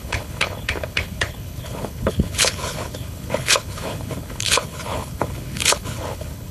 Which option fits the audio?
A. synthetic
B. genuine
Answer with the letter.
A